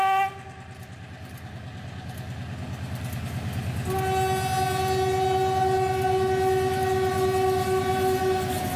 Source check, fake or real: real